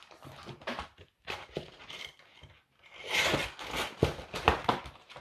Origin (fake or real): real